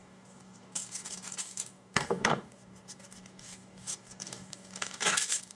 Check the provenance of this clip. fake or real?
fake